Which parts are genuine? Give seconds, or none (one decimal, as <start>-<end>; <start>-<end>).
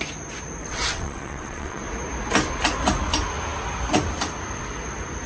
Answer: 0.0-0.6; 1.8-5.3